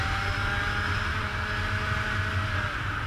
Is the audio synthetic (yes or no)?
no